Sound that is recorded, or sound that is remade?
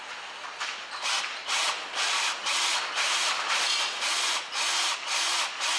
recorded